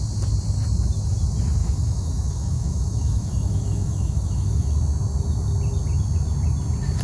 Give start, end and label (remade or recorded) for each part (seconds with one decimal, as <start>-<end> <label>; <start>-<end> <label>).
0.0-1.6 recorded; 1.6-4.7 remade; 4.7-7.0 recorded